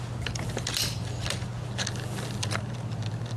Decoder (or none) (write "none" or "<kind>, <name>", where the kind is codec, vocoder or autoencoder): none